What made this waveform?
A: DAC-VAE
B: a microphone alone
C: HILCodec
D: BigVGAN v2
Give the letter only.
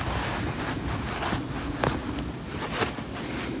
B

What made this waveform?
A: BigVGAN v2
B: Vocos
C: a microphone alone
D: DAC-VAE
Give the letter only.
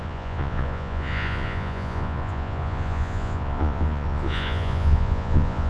B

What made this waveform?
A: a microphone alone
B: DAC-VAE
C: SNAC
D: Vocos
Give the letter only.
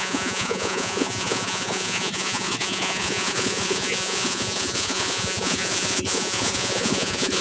D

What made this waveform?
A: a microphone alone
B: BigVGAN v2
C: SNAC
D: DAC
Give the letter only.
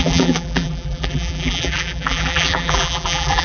B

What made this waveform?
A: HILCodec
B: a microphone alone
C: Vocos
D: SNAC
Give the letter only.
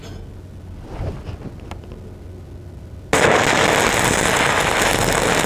B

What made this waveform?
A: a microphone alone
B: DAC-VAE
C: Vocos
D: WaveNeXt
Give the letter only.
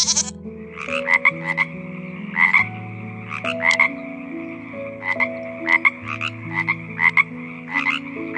A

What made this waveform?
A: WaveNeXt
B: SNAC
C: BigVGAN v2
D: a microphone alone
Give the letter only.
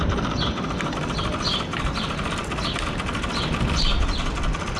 C